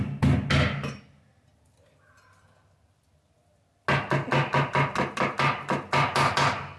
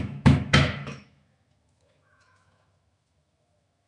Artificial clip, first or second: second